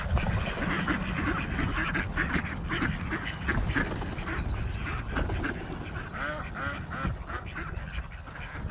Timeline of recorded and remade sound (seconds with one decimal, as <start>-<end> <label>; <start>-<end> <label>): 0.0-3.5 recorded; 3.5-4.2 remade; 4.2-8.7 recorded